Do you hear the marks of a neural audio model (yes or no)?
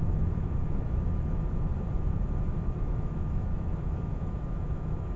yes